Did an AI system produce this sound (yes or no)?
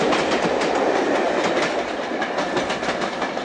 no